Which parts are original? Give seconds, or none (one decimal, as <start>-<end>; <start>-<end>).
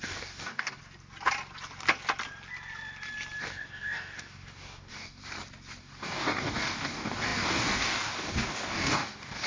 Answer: 0.8-3.4; 5.2-5.8